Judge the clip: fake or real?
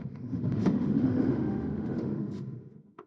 fake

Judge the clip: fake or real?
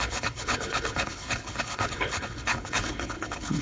fake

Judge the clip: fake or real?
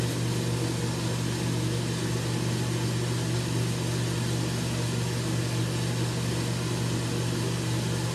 real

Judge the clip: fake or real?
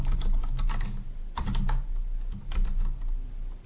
real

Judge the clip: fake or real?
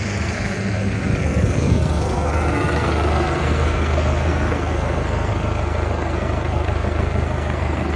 fake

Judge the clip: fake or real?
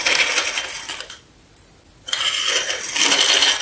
real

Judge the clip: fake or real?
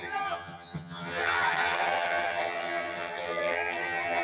fake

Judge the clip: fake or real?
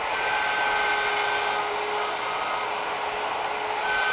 real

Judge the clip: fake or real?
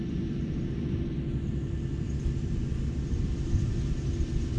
real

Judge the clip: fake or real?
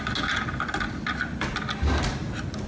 real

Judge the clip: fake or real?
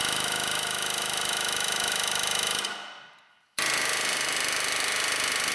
real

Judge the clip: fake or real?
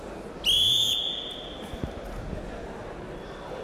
real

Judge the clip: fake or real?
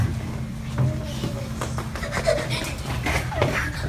real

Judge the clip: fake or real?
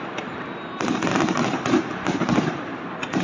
fake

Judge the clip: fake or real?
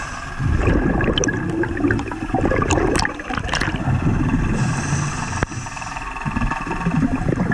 real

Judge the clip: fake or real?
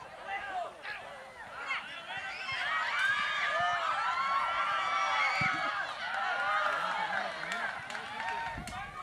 real